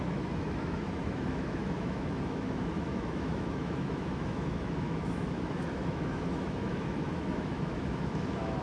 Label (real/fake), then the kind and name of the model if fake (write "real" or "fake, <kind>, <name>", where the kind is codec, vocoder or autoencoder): fake, autoencoder, DAC-VAE